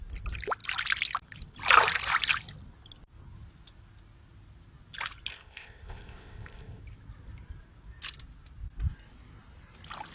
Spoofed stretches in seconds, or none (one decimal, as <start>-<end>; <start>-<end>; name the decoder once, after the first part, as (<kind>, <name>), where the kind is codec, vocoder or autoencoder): 5.3-6.8 (codec, ZipCodec)